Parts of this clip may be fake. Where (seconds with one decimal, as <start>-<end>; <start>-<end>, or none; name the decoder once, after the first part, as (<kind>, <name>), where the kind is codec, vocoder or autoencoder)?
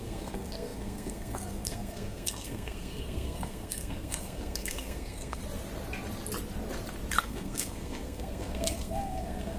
0.0-5.4 (codec, SNAC); 7.2-9.6